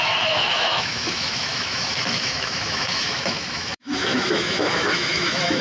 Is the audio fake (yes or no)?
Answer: yes